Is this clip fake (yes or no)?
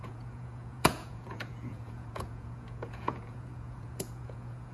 yes